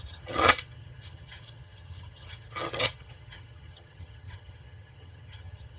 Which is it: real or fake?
fake